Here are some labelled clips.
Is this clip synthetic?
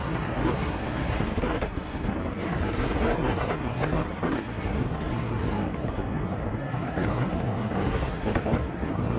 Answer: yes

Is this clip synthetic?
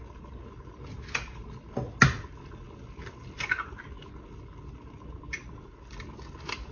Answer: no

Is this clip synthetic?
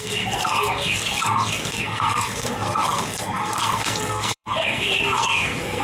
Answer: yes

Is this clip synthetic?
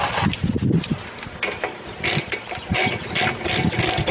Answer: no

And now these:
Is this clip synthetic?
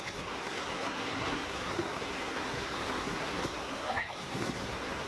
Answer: yes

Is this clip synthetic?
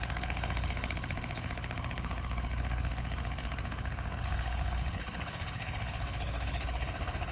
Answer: yes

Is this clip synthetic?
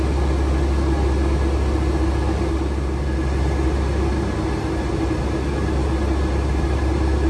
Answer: no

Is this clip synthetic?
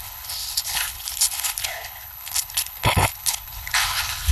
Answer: yes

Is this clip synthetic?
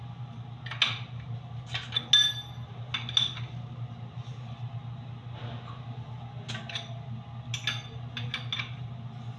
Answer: no